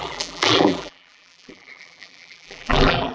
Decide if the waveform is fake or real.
fake